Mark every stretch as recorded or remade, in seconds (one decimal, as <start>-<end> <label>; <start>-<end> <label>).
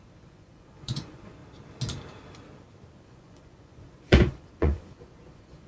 0.0-1.4 remade; 1.4-3.0 recorded; 3.0-5.7 remade